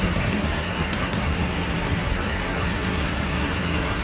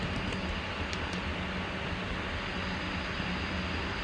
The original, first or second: second